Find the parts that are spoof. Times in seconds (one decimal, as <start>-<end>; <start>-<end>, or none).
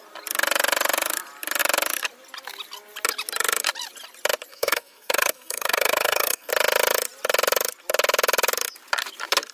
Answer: 4.5-6.5